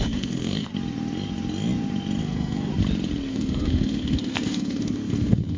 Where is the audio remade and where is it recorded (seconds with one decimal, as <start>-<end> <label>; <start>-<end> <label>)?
0.0-0.7 remade; 0.7-2.2 recorded; 2.2-2.7 remade; 2.7-3.3 recorded; 3.3-5.6 remade